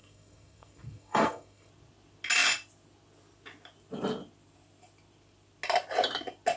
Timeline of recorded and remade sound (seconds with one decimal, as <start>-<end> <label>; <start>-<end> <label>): 0.0-1.7 remade; 1.7-6.6 recorded